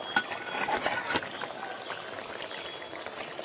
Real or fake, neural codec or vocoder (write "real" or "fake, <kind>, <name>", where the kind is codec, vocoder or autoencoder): real